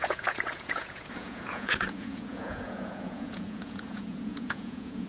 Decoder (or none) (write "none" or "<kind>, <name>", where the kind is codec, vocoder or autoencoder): vocoder, Vocos